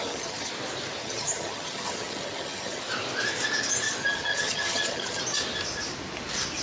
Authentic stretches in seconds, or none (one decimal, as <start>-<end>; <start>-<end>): 0.5-1.0; 2.8-4.0; 5.2-6.6